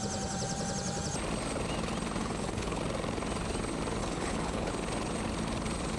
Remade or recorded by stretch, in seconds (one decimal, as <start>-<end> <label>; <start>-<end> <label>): 0.0-2.2 recorded; 2.2-2.8 remade; 2.8-4.0 recorded; 4.0-4.7 remade; 4.7-6.0 recorded